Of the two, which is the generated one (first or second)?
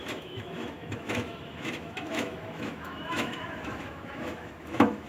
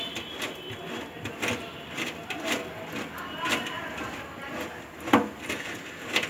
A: first